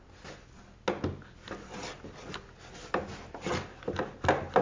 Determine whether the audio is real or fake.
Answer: real